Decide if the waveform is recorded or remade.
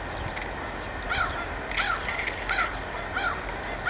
recorded